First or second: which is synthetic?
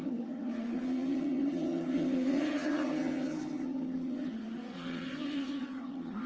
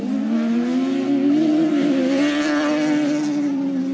first